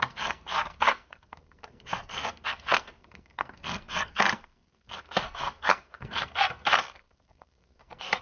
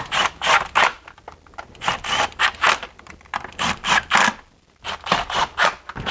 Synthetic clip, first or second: first